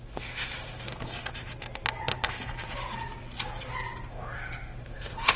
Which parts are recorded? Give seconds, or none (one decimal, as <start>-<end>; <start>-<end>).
0.9-4.1